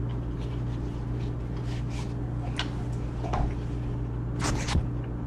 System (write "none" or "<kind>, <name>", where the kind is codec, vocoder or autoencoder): none